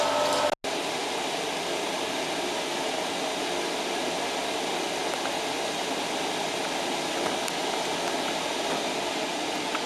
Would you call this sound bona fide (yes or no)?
yes